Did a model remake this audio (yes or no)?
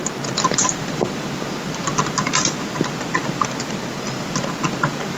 no